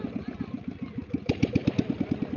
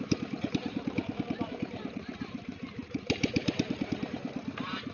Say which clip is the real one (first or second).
first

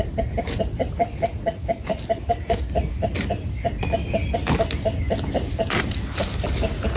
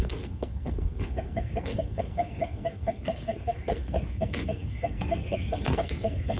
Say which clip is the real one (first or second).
first